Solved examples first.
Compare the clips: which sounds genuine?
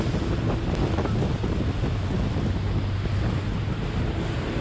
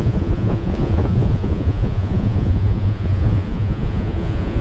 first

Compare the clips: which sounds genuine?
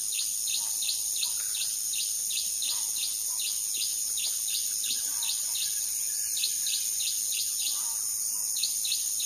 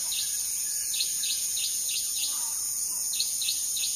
first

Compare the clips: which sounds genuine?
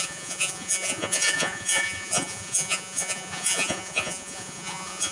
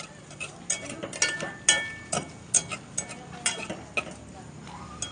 second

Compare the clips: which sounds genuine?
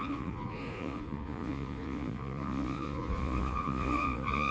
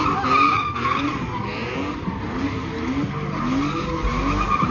second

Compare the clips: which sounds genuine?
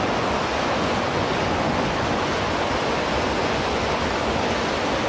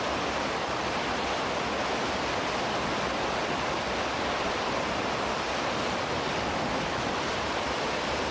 second